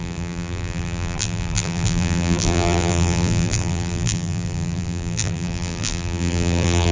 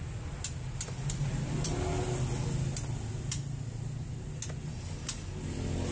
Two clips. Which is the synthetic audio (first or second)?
first